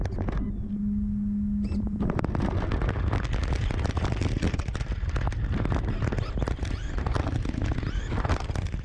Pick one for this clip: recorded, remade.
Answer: recorded